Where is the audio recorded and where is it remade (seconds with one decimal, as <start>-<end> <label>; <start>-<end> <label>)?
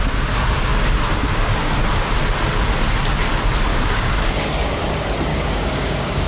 0.0-3.7 recorded; 3.7-4.8 remade; 4.8-5.3 recorded; 5.3-6.3 remade